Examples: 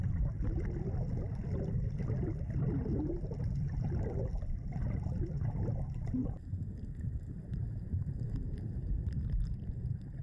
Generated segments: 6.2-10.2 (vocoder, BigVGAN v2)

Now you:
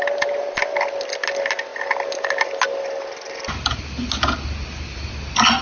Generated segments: none

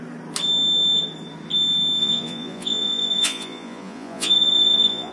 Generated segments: 2.0-5.1 (vocoder, Vocos)

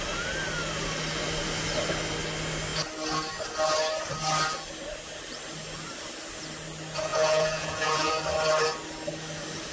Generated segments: 7.1-8.1 (vocoder, Vocos)

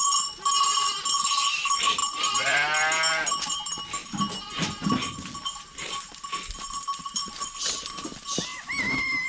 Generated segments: none

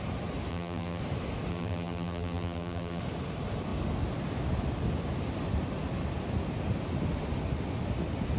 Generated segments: 0.5-1.0 (vocoder, BigVGAN v2); 1.5-3.0

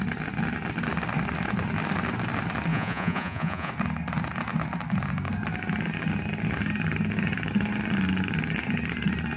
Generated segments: 2.7-3.7 (vocoder, Vocos)

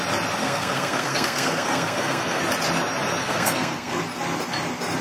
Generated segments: 0.4-2.4 (codec, SNAC); 3.2-4.0